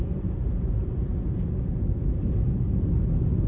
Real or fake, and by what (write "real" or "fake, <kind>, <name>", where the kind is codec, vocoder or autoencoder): real